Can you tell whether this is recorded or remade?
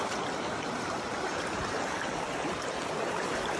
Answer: recorded